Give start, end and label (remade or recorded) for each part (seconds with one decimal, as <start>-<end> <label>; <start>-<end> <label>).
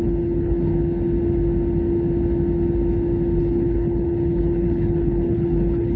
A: 0.0-0.7 remade; 0.7-3.4 recorded; 3.4-6.0 remade